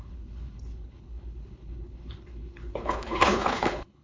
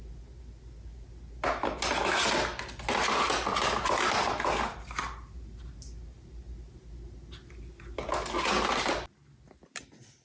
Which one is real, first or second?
second